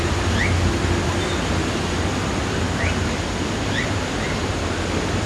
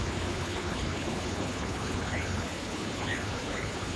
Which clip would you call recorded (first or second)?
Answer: first